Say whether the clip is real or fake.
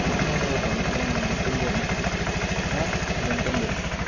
real